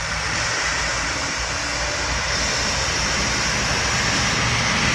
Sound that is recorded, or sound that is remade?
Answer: recorded